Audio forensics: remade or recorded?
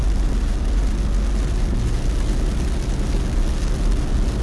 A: recorded